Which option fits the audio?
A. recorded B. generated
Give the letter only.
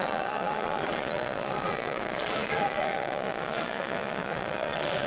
B